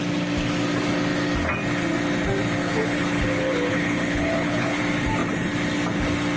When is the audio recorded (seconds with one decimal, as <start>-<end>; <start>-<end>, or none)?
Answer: 0.0-2.6; 4.8-6.4